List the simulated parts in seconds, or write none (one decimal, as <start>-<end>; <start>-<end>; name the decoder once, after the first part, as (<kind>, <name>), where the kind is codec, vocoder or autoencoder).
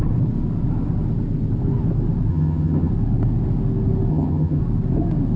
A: 2.3-2.9 (vocoder, HiFi-GAN); 4.1-4.6